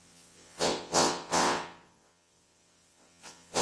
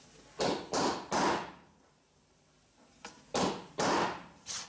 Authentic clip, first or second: second